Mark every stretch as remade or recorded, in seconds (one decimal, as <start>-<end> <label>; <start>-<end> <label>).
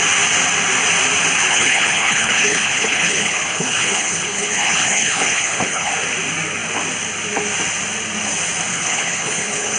0.0-1.5 recorded; 1.5-5.9 remade; 5.9-8.7 recorded; 8.7-9.8 remade